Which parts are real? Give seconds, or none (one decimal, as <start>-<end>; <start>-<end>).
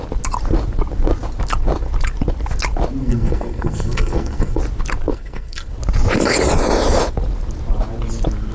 0.0-3.0; 4.6-5.1; 5.7-8.5